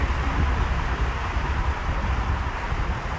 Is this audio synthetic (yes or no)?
no